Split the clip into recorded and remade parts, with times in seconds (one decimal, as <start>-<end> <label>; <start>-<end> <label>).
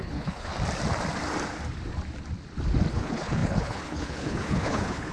0.0-0.5 remade; 0.5-2.9 recorded; 2.9-5.1 remade